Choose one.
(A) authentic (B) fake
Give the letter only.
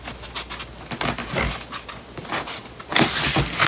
A